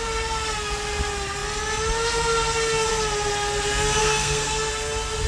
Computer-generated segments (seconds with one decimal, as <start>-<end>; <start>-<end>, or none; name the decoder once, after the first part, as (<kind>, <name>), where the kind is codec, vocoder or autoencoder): 4.0-4.7 (codec, SNAC)